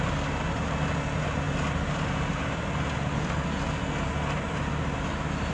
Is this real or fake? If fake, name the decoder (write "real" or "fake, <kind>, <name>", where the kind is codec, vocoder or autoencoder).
real